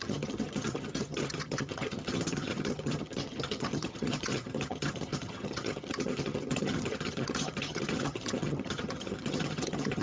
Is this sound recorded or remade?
remade